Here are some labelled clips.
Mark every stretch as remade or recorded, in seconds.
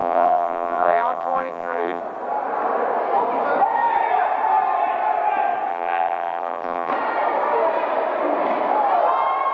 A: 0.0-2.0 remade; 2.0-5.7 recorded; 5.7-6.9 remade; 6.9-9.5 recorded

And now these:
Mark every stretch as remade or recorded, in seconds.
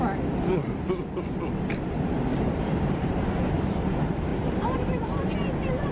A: 0.0-2.3 recorded; 2.3-3.2 remade; 3.2-5.9 recorded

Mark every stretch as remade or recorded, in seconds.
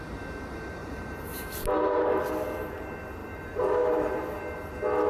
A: 0.0-0.8 recorded; 0.8-2.2 remade; 2.2-3.2 recorded; 3.2-4.2 remade; 4.2-5.1 recorded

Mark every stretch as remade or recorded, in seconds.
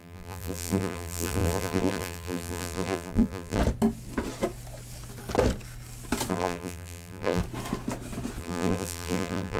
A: 0.0-3.6 remade; 3.6-6.3 recorded; 6.3-7.4 remade; 7.4-8.4 recorded; 8.4-9.6 remade